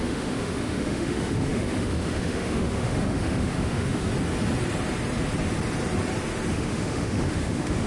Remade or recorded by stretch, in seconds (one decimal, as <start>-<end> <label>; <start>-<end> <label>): 0.0-4.1 remade; 4.1-6.5 recorded; 6.5-7.9 remade